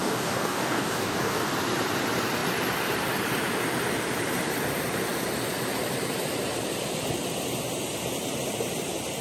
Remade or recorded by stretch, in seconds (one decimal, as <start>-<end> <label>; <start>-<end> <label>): 0.0-1.5 remade; 1.5-9.2 recorded